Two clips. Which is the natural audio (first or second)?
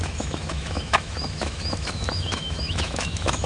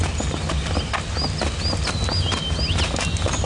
second